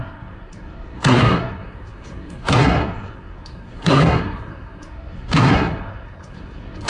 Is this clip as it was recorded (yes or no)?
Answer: no